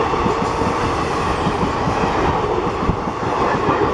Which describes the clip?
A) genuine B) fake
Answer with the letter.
A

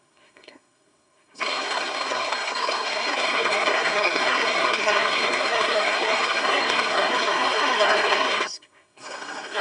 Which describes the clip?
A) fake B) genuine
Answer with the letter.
A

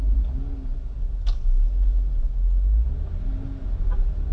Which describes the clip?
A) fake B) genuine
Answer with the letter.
B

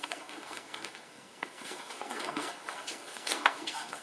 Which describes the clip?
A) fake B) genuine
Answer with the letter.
A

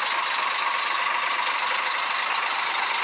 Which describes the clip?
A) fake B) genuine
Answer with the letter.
B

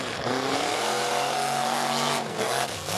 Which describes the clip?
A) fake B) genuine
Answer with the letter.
A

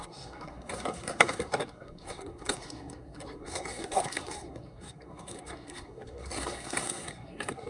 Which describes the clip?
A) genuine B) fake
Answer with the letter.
B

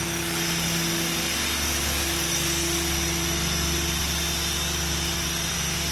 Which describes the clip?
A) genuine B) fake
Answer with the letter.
A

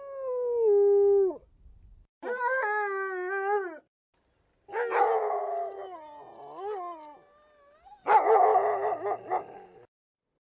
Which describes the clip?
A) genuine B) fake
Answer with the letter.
A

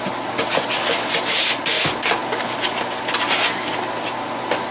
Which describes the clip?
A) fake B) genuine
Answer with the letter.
B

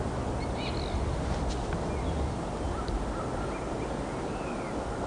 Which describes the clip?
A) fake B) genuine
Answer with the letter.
B